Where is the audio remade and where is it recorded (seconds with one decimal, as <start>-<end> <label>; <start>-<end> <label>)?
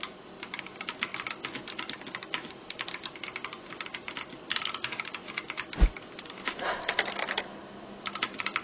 0.0-8.6 recorded